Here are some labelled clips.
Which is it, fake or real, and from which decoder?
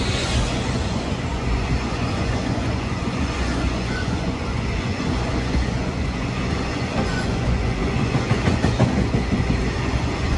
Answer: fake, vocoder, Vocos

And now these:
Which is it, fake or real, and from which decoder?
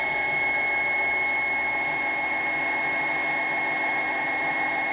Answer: real